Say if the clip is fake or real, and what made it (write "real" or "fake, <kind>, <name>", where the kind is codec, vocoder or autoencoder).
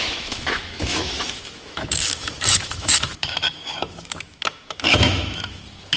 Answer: fake, autoencoder, DAC-VAE